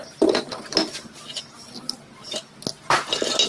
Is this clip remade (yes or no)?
no